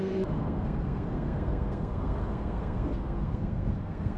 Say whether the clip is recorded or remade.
remade